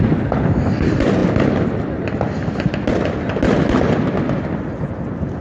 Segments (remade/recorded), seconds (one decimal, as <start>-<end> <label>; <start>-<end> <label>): 0.0-5.4 recorded